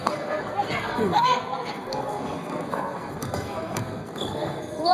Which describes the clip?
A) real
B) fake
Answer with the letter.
B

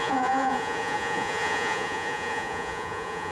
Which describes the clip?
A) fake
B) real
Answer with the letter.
A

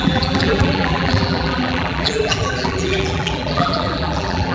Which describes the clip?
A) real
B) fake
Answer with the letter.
B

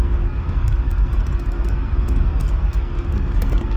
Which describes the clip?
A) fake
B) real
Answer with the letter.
A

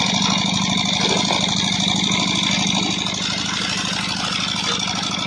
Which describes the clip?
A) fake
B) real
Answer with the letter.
B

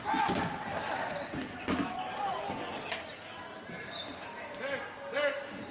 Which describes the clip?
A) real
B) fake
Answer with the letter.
A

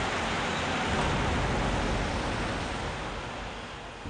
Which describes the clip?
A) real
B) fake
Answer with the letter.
A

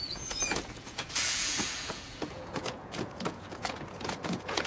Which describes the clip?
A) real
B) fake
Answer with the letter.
B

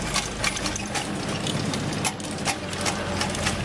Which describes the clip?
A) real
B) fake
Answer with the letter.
A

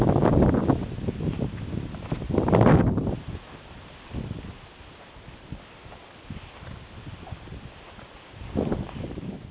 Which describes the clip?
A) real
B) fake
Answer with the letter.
A